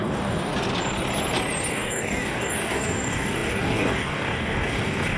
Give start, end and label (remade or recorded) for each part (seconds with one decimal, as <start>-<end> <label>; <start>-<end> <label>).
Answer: 0.0-0.5 remade; 0.5-1.7 recorded; 1.7-5.2 remade